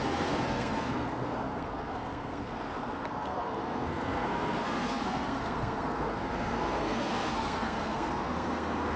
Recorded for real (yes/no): no